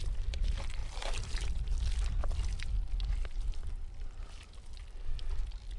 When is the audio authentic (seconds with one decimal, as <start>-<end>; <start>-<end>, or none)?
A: 0.0-0.8; 1.6-5.8